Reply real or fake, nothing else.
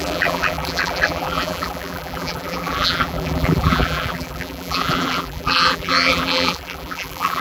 fake